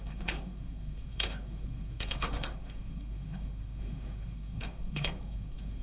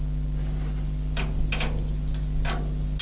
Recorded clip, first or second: second